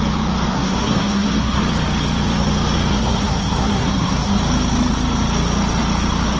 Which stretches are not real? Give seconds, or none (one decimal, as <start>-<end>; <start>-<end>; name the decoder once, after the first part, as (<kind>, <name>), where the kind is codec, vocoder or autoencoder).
0.5-1.6 (codec, SNAC); 2.9-4.4